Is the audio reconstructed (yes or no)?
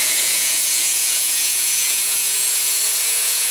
yes